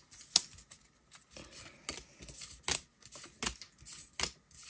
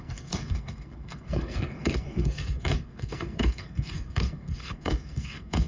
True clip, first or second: first